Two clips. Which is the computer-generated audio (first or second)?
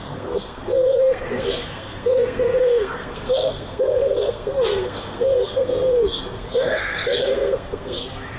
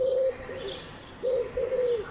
first